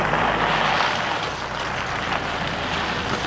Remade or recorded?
recorded